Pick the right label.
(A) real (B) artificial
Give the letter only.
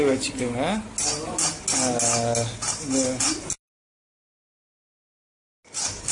A